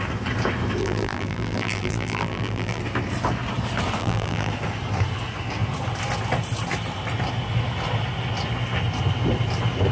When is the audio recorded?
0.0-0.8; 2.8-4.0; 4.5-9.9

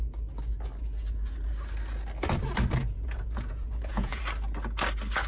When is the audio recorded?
0.0-2.8; 4.2-5.3